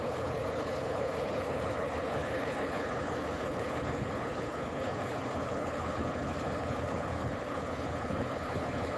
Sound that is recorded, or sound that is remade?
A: remade